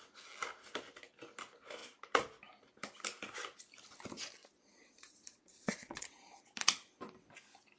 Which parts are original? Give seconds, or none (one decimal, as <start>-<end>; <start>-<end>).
0.0-4.4; 6.4-7.8